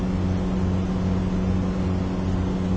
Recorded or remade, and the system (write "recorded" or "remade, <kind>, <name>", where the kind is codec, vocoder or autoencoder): recorded